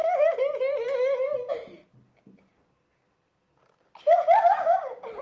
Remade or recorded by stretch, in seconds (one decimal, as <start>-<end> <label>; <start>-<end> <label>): 0.0-5.2 recorded